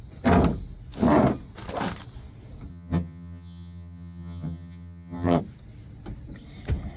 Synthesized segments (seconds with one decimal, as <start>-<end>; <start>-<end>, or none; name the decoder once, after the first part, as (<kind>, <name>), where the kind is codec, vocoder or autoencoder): 2.7-5.4 (vocoder, HiFi-GAN)